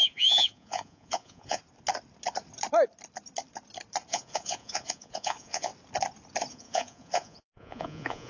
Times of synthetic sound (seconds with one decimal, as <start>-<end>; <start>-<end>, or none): 0.0-1.6; 4.1-5.7; 6.5-8.3